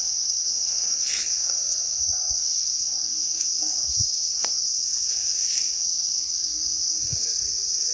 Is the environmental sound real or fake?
fake